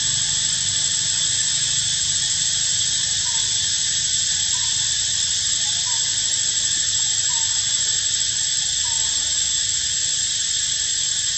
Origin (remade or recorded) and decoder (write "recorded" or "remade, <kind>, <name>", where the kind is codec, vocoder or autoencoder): recorded